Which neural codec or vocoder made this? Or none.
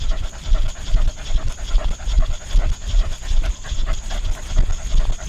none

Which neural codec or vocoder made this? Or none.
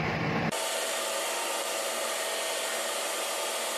none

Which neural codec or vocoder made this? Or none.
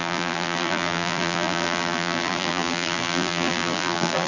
vocoder, BigVGAN v2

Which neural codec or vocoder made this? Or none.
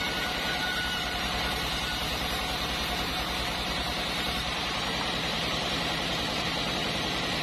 vocoder, BigVGAN v2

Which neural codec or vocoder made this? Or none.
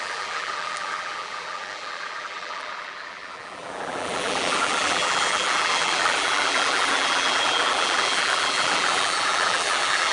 vocoder, BigVGAN v2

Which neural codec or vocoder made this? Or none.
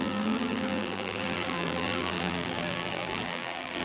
vocoder, BigVGAN v2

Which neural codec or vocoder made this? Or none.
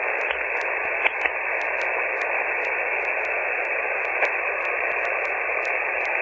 vocoder, BigVGAN v2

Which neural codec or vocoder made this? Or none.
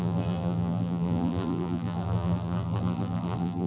vocoder, BigVGAN v2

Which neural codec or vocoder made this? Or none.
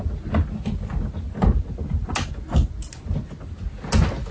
none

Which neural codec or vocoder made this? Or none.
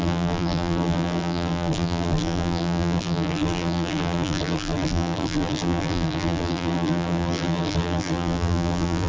vocoder, BigVGAN v2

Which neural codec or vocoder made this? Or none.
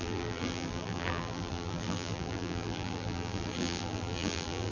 vocoder, BigVGAN v2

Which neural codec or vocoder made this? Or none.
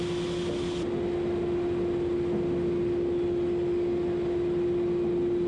none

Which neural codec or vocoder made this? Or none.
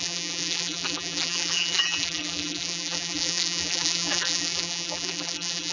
vocoder, BigVGAN v2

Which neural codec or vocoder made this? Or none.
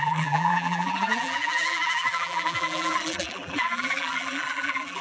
vocoder, BigVGAN v2